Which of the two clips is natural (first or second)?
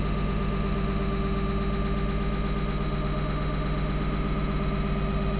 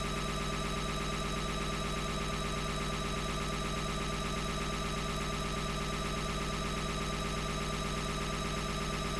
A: second